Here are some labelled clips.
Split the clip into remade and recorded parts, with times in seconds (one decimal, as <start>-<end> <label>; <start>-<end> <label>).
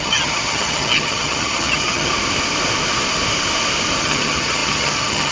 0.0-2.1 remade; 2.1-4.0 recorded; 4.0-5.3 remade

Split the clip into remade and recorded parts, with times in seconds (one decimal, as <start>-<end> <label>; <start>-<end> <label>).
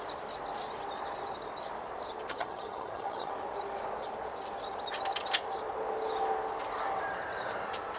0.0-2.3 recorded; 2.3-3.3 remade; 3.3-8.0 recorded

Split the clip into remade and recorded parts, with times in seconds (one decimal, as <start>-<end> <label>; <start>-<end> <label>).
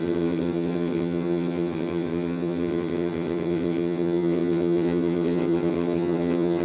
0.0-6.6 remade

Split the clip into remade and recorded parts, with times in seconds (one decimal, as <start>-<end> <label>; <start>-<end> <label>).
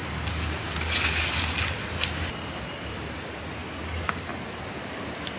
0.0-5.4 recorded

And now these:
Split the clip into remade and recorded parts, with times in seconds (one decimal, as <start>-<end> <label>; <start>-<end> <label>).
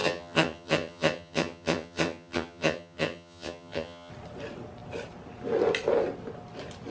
0.0-4.1 remade; 4.1-6.9 recorded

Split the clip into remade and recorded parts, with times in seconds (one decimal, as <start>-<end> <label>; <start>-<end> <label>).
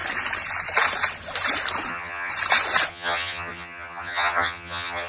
0.0-1.9 recorded; 1.9-2.3 remade; 2.3-2.9 recorded; 2.9-5.1 remade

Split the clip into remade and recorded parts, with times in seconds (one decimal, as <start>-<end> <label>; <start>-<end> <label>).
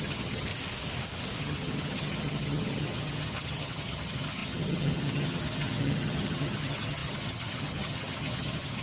0.0-0.5 remade; 0.5-1.4 recorded; 1.4-8.8 remade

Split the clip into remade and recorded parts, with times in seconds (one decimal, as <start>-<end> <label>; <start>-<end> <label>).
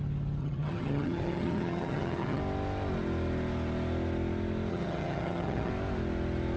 0.0-0.4 recorded; 0.4-2.4 remade; 2.4-4.7 recorded; 4.7-5.7 remade; 5.7-6.6 recorded